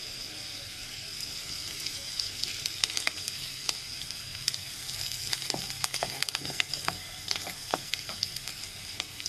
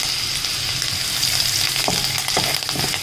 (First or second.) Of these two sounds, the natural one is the second